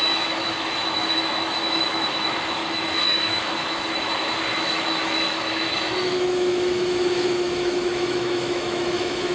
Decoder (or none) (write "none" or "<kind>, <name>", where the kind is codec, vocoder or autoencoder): autoencoder, DAC-VAE